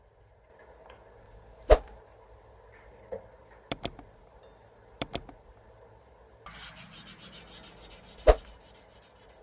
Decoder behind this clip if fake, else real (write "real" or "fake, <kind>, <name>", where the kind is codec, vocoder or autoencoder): real